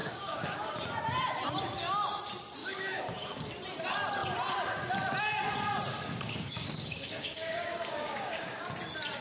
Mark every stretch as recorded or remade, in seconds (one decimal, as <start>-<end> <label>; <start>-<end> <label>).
0.0-0.7 remade; 0.7-2.6 recorded; 2.6-3.5 remade; 3.5-5.9 recorded; 5.9-8.7 remade; 8.7-9.2 recorded